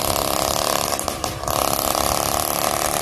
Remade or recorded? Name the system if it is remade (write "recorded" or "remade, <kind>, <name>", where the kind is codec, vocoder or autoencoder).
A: recorded